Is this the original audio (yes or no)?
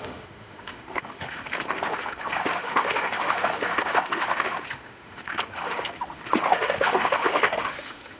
no